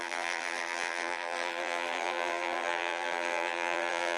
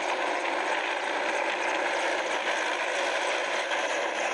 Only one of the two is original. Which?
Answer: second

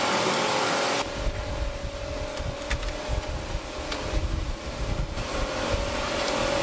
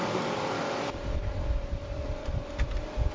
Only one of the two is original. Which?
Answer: first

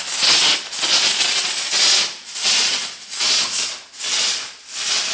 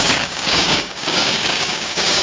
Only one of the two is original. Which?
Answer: first